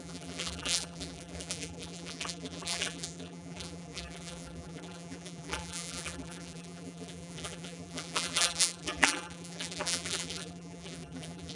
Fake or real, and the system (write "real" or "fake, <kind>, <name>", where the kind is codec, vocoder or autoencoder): fake, vocoder, BigVGAN v2